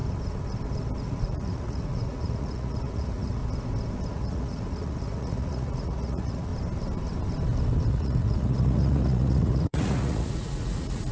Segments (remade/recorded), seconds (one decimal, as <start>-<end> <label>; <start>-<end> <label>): 0.0-1.0 recorded; 1.0-3.4 remade; 3.4-4.1 recorded; 4.1-6.5 remade; 6.5-7.9 recorded; 7.9-11.1 remade

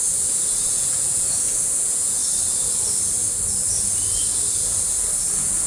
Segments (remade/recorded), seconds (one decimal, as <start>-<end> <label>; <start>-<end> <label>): 0.0-2.2 remade; 2.2-5.2 recorded; 5.2-5.7 remade

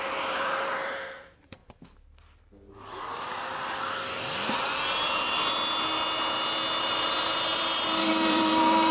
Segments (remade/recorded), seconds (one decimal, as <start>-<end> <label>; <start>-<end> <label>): 0.0-1.6 remade; 1.6-6.8 recorded; 6.8-8.9 remade

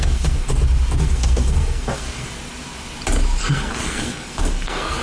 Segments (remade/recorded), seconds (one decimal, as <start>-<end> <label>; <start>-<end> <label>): 0.0-0.5 remade; 0.5-1.0 recorded; 1.0-2.3 remade; 2.3-3.4 recorded; 3.4-5.0 remade

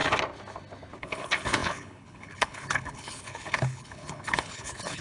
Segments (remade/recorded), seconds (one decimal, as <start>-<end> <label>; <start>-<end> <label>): 0.0-1.0 recorded; 1.0-5.0 remade